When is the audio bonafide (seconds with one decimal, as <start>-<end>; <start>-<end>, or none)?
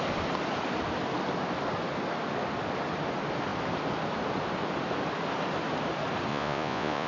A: 0.0-6.3